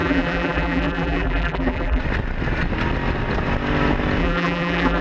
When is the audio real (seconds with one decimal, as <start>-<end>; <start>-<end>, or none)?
2.0-4.2